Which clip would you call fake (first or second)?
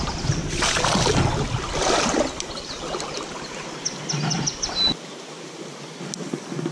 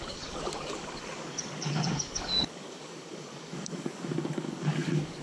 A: second